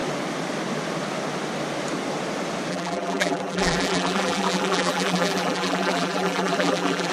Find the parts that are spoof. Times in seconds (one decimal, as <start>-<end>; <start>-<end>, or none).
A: 2.7-7.1